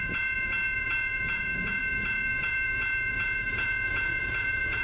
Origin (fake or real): fake